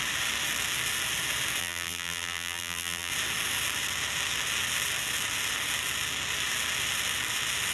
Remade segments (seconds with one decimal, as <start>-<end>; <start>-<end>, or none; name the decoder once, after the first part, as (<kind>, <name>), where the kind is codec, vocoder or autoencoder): 1.6-3.1 (vocoder, BigVGAN v2)